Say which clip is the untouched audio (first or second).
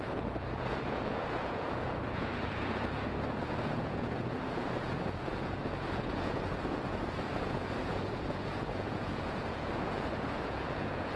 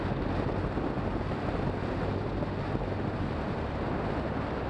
second